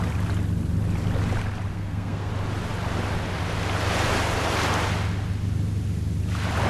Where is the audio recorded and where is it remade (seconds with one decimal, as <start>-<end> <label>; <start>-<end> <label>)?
0.0-1.7 recorded; 1.7-2.3 remade; 2.3-6.7 recorded